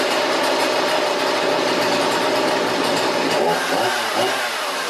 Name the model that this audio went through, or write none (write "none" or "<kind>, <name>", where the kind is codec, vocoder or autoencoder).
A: none